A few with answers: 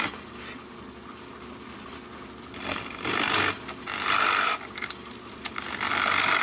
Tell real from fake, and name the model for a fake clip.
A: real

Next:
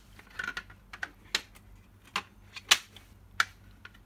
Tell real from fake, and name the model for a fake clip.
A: real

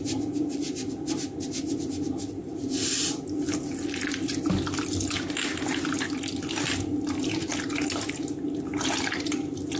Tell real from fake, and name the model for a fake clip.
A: real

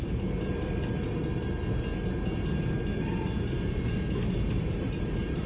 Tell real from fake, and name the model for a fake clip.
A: real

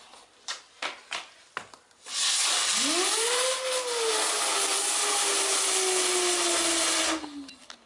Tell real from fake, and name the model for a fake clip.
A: real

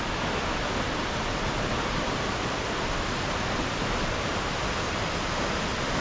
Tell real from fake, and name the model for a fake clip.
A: real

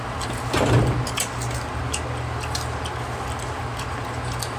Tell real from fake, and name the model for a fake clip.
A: real